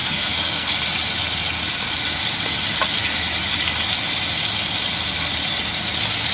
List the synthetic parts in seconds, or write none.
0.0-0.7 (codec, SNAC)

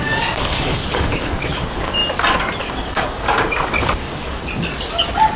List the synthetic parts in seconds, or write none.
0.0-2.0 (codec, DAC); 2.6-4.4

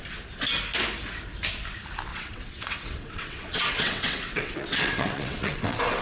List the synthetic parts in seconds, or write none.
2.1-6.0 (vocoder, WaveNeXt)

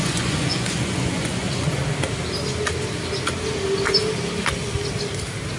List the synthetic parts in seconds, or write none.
0.0-1.8 (vocoder, Vocos)

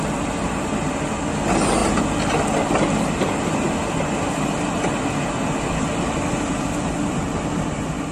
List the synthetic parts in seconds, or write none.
none